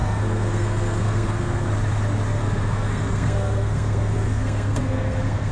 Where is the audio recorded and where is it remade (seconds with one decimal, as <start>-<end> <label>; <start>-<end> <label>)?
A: 0.0-1.7 remade; 1.7-2.4 recorded; 2.4-5.5 remade